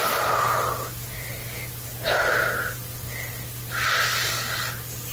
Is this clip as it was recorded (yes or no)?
yes